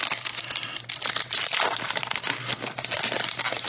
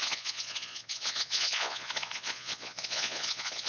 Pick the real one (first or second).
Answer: first